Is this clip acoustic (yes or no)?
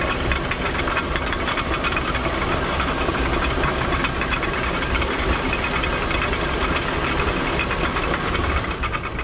yes